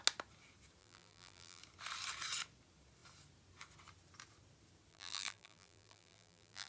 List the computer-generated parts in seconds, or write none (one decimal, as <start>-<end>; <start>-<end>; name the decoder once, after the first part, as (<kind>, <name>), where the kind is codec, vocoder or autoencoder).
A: 0.8-1.6 (vocoder, BigVGAN v2); 4.9-6.7